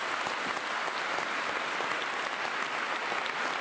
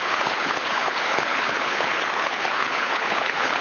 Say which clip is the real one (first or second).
first